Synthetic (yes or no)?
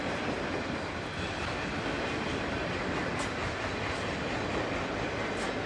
no